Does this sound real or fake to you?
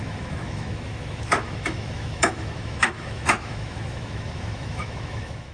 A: fake